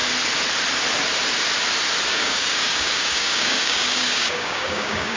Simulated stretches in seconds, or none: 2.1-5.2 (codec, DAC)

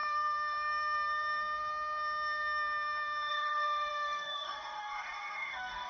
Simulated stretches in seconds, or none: 3.3-5.9 (codec, DAC)